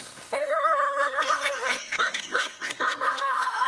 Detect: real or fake fake